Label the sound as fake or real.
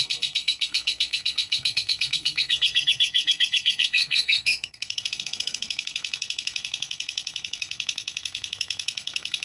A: fake